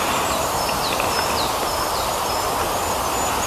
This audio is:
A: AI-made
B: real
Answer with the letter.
B